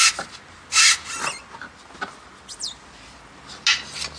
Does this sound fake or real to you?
real